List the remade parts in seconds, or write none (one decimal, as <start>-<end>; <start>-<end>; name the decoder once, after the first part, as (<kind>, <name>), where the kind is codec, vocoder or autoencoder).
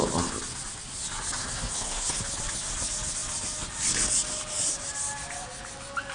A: 1.4-2.2 (codec, SNAC)